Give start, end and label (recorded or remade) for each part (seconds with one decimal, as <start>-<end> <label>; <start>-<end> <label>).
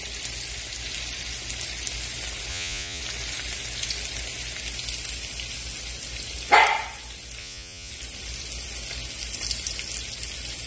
0.0-2.5 recorded; 2.5-3.0 remade; 3.0-7.4 recorded; 7.4-7.9 remade; 7.9-10.7 recorded